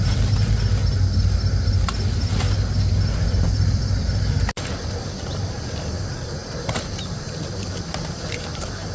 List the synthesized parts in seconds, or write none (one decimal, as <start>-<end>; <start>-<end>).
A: 6.4-8.3